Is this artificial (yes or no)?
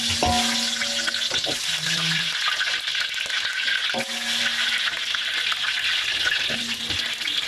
no